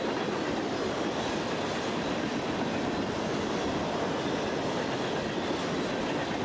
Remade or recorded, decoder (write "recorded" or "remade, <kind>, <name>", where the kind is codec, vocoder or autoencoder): recorded